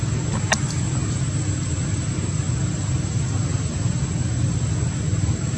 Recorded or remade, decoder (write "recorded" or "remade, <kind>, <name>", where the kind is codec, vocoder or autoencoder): recorded